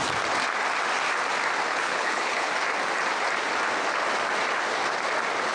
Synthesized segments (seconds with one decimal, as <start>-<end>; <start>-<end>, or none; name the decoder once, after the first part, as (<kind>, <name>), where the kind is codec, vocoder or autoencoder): 1.7-2.5 (codec, HILCodec)